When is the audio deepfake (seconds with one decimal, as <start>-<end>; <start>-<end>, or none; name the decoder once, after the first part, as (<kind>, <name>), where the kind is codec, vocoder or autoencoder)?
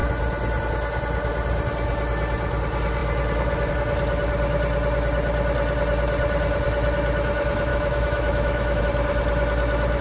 7.7-8.8 (autoencoder, DAC-VAE)